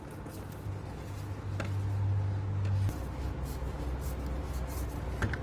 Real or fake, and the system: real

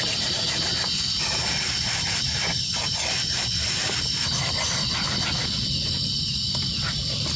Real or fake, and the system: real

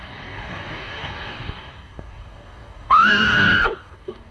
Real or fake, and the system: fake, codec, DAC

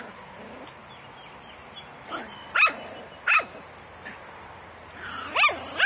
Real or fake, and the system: real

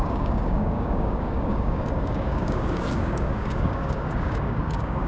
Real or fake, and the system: fake, codec, DAC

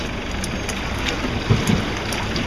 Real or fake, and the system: real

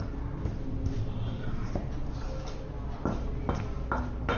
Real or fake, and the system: real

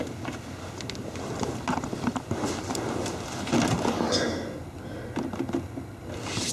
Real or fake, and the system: real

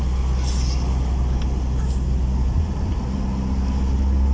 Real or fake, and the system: real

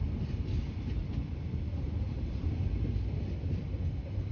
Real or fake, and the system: real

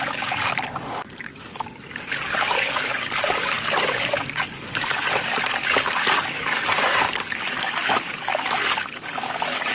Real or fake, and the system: fake, codec, DAC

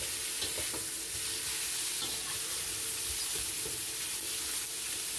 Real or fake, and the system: real